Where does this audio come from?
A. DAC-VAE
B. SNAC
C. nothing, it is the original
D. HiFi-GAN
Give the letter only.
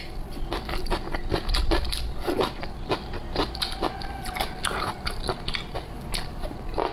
C